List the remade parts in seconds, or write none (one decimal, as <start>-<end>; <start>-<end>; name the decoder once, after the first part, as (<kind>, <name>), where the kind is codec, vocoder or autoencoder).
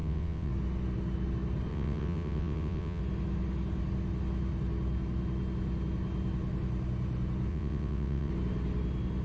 0.0-0.5 (vocoder, WaveNeXt); 1.7-3.0; 7.5-8.3